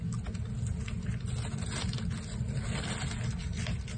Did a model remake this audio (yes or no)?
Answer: no